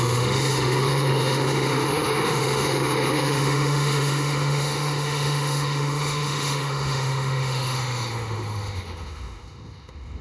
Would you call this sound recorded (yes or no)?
no